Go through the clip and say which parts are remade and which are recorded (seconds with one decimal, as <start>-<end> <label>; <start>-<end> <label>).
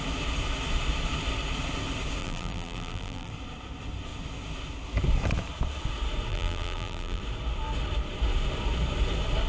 0.0-2.2 recorded; 2.2-3.3 remade; 3.3-6.3 recorded; 6.3-7.2 remade; 7.2-9.5 recorded